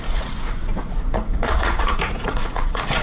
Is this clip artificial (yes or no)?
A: yes